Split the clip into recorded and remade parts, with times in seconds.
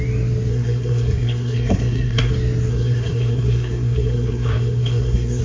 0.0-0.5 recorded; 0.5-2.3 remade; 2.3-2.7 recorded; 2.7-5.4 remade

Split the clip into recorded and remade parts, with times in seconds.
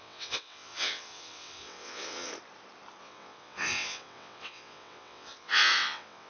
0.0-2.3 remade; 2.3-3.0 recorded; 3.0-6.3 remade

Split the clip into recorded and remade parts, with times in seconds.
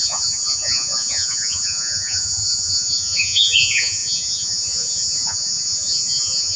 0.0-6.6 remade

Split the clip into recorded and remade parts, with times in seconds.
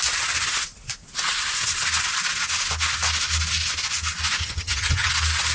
0.0-4.4 recorded; 4.4-5.1 remade; 5.1-5.5 recorded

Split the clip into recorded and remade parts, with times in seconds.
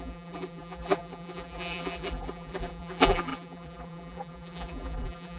0.0-5.4 remade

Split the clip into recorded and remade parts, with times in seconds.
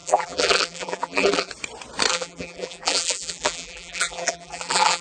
0.0-1.5 remade; 1.5-2.1 recorded; 2.1-5.0 remade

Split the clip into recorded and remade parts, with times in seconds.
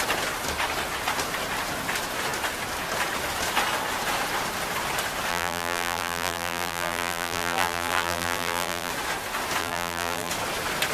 0.0-5.3 recorded; 5.3-8.9 remade; 8.9-9.6 recorded; 9.6-10.3 remade; 10.3-10.9 recorded